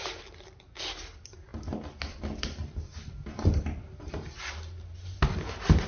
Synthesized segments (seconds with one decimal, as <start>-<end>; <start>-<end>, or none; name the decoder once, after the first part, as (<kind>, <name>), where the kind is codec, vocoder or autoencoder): 0.0-0.6 (vocoder, BigVGAN v2); 1.5-4.4